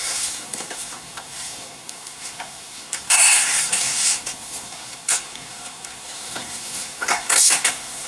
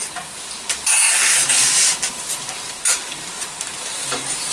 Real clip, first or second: second